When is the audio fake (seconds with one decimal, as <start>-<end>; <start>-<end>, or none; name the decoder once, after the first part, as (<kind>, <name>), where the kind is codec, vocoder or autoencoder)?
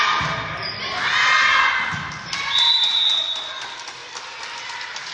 none